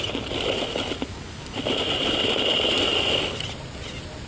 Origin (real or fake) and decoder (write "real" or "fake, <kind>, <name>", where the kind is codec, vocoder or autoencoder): real